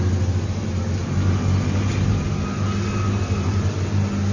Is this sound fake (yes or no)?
no